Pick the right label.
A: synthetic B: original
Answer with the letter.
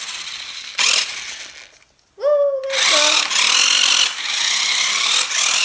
B